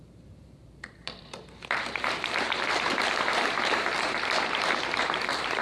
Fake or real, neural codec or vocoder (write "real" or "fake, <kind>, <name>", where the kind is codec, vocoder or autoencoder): fake, vocoder, BigVGAN v2